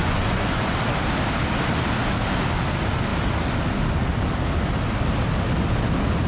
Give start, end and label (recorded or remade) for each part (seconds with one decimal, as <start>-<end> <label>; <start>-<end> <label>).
0.0-0.7 remade; 0.7-6.3 recorded